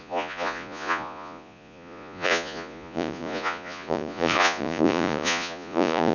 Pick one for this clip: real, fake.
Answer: fake